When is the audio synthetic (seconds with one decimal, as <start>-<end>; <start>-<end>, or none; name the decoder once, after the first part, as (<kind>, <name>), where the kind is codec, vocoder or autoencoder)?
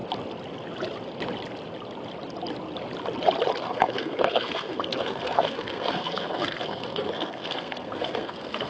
3.6-8.7 (codec, SNAC)